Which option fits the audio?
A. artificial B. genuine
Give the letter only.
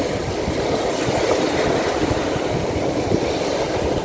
B